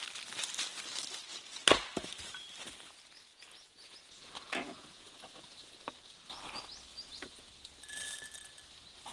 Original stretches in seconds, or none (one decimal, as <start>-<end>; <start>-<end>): 0.0-3.3; 6.2-6.9; 7.5-9.1